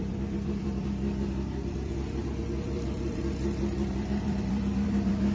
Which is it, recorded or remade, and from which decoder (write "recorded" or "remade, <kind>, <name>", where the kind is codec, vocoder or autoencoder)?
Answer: remade, vocoder, BigVGAN v2